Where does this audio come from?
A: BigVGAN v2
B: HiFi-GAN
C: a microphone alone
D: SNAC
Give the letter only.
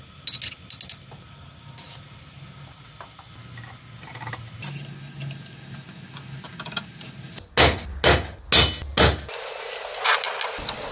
C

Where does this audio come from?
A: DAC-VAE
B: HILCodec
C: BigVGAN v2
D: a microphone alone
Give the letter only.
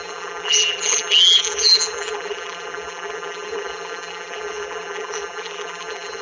C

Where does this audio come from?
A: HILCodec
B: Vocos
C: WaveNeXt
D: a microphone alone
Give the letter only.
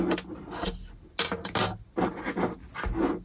D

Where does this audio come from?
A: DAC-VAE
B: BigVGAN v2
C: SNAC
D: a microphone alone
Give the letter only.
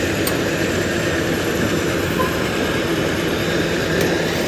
B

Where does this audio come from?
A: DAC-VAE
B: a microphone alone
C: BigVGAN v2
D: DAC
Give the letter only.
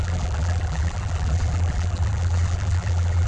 C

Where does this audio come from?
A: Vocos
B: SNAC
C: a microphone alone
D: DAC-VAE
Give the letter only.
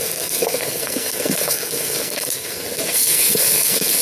B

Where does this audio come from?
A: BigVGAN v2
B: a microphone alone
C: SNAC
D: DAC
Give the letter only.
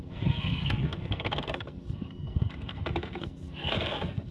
C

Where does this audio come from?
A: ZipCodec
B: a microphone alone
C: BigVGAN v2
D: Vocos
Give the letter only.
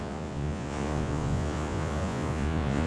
D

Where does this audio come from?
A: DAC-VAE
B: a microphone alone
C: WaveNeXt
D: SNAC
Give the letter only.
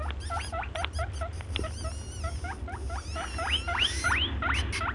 B